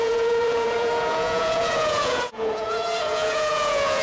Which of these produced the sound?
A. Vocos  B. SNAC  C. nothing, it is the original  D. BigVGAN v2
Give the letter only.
A